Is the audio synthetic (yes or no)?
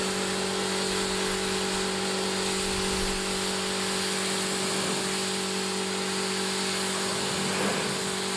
no